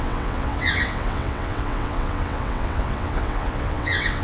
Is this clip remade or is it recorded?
remade